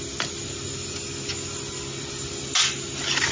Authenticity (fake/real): real